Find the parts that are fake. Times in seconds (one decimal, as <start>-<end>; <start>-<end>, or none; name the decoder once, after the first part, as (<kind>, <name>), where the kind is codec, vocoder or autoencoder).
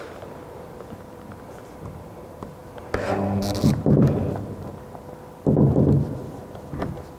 0.0-2.6 (vocoder, BigVGAN v2); 3.6-4.7